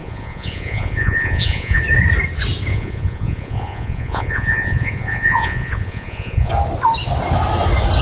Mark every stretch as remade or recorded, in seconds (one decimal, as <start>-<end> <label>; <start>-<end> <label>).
0.0-1.8 remade; 1.8-2.7 recorded; 2.7-6.5 remade; 6.5-8.0 recorded